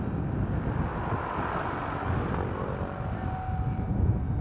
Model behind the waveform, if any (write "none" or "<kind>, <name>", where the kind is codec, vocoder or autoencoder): none